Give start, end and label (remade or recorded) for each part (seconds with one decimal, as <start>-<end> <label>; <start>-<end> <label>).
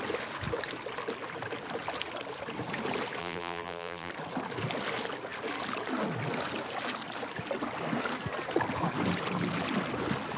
0.0-3.2 recorded; 3.2-4.1 remade; 4.1-10.4 recorded